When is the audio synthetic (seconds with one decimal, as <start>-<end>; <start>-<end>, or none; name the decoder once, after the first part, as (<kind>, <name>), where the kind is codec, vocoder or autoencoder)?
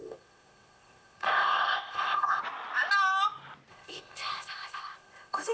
0.0-2.4 (codec, ZipCodec); 3.7-5.5